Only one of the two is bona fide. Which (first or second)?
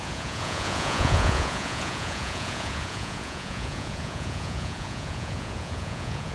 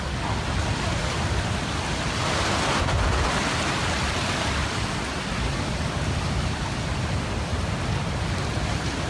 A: second